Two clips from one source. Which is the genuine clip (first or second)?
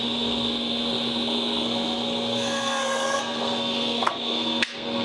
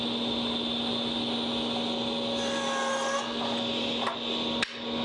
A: second